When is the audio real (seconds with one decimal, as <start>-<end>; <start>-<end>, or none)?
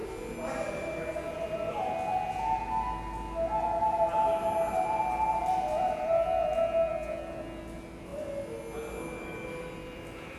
0.0-10.4